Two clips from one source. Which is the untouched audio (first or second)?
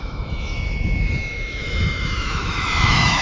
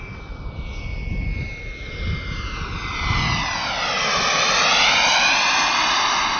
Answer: second